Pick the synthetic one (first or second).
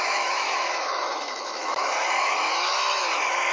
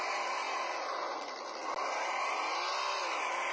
first